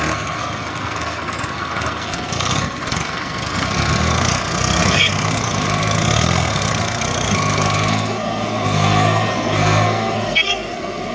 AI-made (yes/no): yes